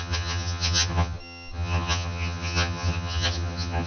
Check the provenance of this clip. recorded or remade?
remade